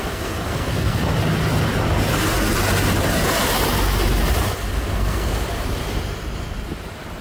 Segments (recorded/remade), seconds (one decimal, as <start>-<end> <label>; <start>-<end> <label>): 0.0-1.1 remade; 1.1-4.7 recorded; 4.7-5.3 remade; 5.3-7.2 recorded